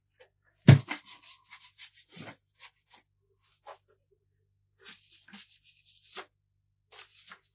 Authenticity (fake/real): real